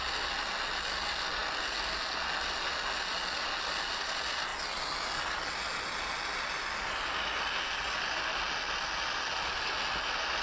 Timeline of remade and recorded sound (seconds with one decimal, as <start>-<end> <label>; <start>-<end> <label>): 0.0-10.4 recorded